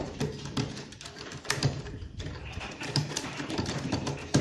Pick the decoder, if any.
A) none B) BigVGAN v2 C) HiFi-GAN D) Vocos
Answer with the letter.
B